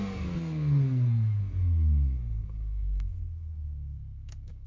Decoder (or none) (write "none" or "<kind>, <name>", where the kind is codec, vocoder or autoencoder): codec, SNAC